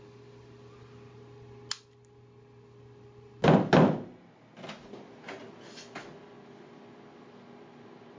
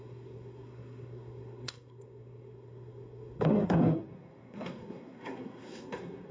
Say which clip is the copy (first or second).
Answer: second